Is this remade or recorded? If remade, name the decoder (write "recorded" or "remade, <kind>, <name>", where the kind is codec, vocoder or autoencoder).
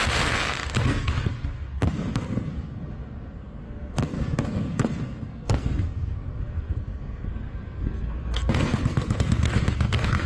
remade, codec, SNAC